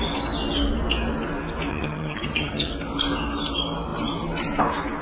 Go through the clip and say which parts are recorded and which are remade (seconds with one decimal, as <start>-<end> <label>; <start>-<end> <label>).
0.0-1.7 recorded; 1.7-2.7 remade; 2.7-5.0 recorded